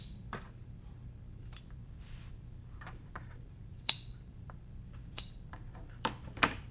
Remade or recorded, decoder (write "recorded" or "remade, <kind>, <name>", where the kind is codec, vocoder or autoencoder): remade, vocoder, BigVGAN v2